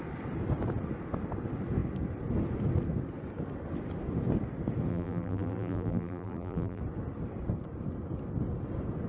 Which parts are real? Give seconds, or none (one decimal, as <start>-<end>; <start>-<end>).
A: 0.0-4.9; 6.8-9.1

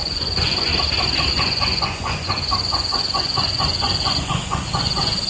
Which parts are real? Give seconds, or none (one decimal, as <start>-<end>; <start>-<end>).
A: 0.7-1.3

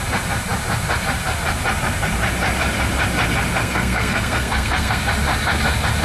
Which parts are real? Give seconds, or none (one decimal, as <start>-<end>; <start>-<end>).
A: 0.0-3.6; 5.0-6.0

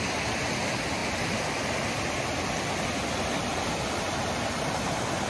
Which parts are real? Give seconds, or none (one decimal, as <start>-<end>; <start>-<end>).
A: 0.0-5.3

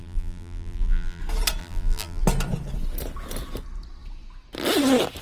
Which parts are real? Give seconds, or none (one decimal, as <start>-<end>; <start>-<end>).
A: 1.2-1.6; 2.2-5.2

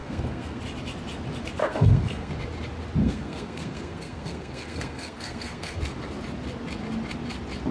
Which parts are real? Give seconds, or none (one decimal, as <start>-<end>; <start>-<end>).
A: 0.6-1.6; 2.3-3.0; 5.8-7.7

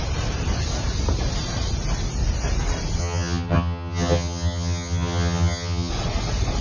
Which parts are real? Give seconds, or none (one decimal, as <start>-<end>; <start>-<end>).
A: 0.0-3.0; 5.9-6.6